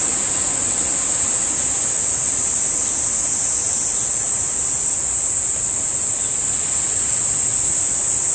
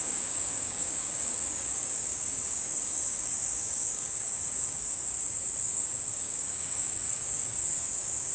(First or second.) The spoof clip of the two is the second